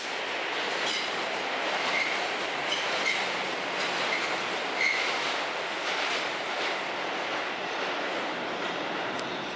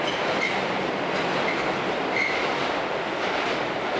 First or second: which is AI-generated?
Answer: second